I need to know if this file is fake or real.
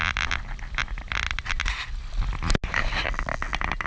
real